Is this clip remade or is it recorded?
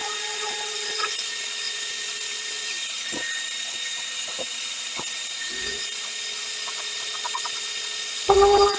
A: remade